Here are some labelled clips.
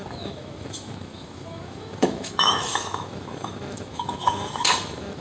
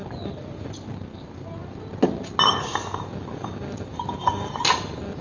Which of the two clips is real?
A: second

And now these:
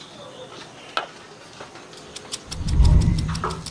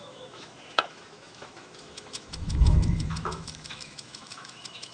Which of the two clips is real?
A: first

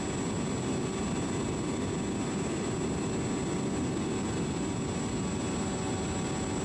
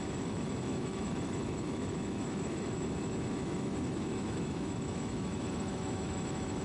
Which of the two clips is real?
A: first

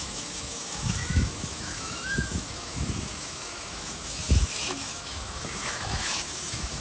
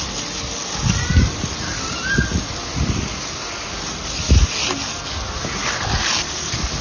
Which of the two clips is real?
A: second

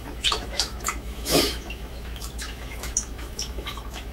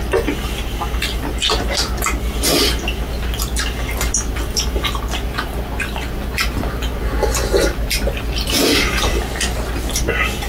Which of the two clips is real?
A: second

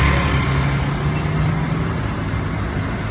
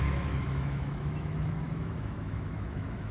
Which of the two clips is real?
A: first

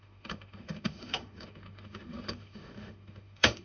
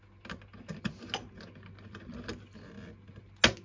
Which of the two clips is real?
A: second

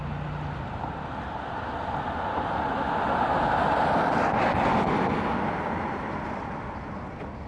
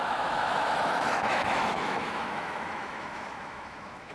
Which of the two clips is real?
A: first